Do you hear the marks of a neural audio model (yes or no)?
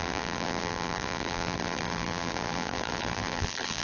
yes